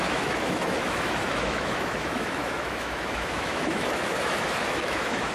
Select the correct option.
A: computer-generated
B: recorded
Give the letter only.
A